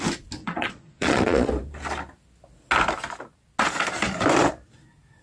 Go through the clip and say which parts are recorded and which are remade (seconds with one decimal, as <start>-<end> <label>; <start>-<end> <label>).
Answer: 0.0-0.4 recorded; 0.4-1.5 remade; 1.5-5.2 recorded